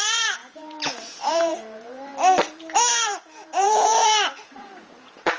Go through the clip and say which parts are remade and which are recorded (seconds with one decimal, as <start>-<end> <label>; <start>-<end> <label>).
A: 0.0-2.1 remade; 2.1-2.9 recorded; 2.9-5.4 remade